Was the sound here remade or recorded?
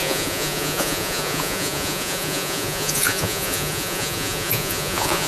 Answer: remade